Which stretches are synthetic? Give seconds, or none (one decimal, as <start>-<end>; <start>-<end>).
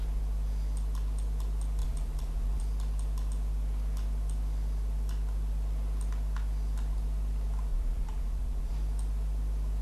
1.8-2.6; 7.7-8.7